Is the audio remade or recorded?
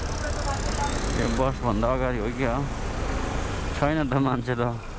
recorded